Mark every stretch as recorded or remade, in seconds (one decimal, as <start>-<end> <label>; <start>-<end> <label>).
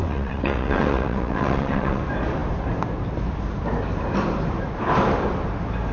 0.0-2.0 remade; 2.0-5.9 recorded